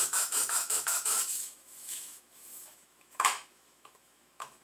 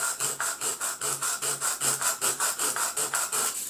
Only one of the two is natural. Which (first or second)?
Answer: second